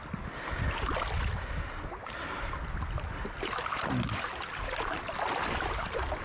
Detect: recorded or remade recorded